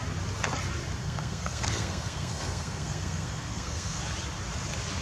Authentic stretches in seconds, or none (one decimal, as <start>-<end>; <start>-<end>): 0.0-1.0; 4.0-5.0